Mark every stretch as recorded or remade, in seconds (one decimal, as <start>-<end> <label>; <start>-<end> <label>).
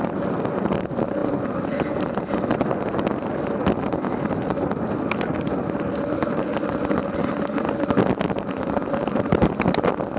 0.0-10.2 recorded